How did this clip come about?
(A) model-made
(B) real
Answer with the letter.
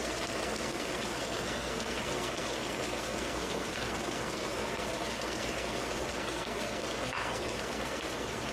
A